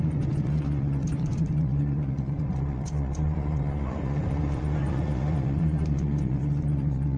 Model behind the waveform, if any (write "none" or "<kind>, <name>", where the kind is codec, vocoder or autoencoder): vocoder, Vocos